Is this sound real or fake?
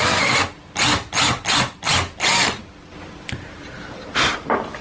real